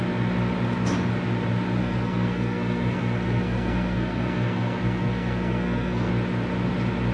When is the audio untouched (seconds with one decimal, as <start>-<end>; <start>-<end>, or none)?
0.0-1.8; 6.1-7.1